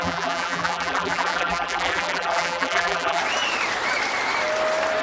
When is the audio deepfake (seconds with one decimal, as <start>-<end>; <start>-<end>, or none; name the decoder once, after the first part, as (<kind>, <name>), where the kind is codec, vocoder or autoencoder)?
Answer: 0.0-3.2 (vocoder, BigVGAN v2)